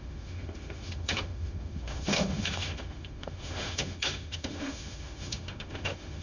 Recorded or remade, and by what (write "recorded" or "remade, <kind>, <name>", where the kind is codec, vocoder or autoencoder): remade, autoencoder, DAC-VAE